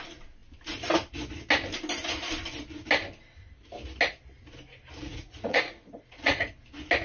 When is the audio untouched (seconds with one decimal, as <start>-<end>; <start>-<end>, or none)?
0.0-5.1; 6.5-7.0